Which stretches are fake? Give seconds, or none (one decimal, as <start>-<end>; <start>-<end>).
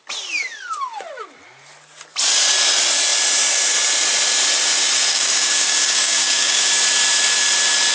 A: 5.1-6.7